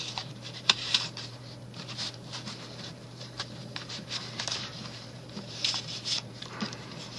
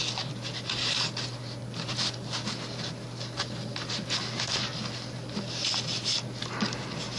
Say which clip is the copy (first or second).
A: first